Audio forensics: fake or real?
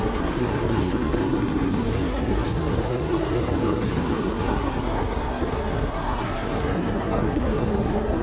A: fake